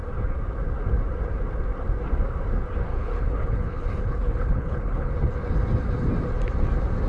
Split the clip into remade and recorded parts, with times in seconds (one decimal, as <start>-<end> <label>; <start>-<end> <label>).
0.0-2.9 recorded; 2.9-5.1 remade; 5.1-7.1 recorded